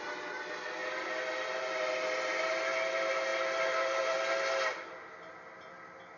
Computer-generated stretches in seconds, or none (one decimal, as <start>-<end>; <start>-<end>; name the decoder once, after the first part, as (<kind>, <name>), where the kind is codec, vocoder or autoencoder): none